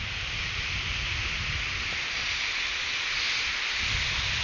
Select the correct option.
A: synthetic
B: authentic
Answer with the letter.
B